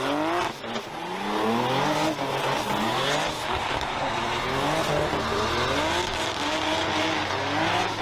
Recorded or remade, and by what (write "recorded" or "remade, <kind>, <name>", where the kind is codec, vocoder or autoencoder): recorded